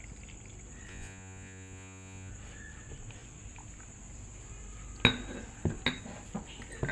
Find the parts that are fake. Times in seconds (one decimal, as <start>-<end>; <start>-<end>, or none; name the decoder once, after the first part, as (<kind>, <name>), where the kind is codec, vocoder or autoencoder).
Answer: 0.9-2.3 (vocoder, Vocos)